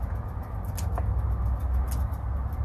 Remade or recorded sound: recorded